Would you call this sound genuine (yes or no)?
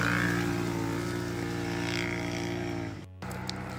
yes